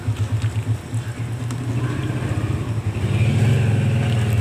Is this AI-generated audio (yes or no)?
no